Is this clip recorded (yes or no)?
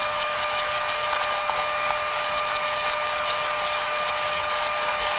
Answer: no